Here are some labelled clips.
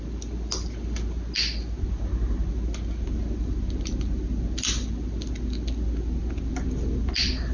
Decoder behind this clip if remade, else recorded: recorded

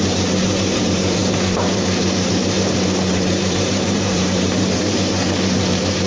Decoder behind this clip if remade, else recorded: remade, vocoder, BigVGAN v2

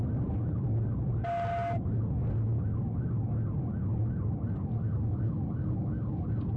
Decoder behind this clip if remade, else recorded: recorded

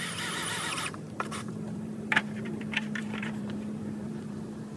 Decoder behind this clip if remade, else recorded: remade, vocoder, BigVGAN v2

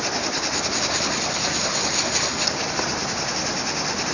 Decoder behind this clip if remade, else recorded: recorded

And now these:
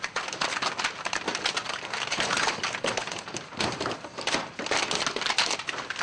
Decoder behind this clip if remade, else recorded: recorded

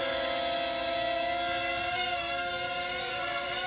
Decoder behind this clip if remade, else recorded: recorded